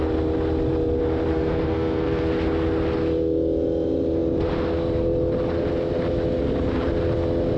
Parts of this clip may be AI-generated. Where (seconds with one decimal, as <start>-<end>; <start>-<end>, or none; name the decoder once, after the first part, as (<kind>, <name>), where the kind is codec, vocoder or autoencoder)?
1.3-2.3 (codec, SNAC)